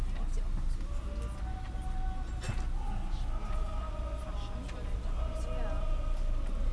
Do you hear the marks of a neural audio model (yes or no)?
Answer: no